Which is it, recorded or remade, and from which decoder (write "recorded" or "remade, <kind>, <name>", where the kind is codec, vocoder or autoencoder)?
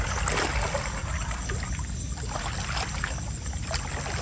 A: recorded